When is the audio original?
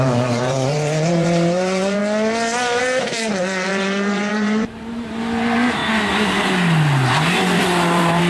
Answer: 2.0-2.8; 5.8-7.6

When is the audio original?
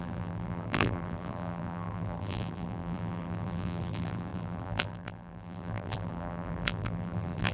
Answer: none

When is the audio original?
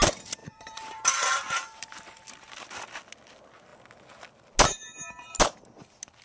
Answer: 0.0-0.4; 2.6-6.2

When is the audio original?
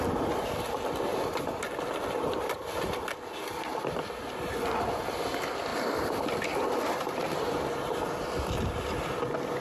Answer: 0.0-9.6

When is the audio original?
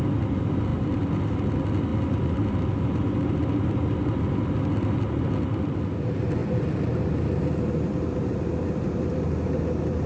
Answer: 0.0-0.7; 1.2-1.9; 2.4-6.4; 7.1-10.1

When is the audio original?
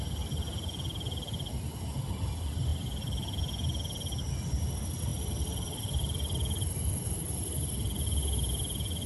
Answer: 0.0-5.1; 7.2-9.1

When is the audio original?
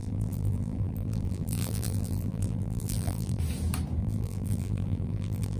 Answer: 3.4-4.0